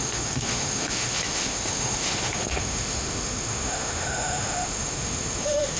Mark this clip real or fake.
fake